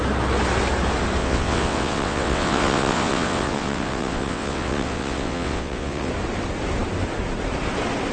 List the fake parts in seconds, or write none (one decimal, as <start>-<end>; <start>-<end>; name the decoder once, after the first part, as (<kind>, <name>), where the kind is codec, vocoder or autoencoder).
1.2-6.1 (vocoder, WaveNeXt)